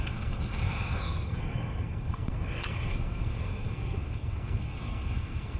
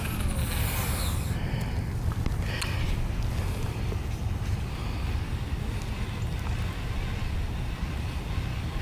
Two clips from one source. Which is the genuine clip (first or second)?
second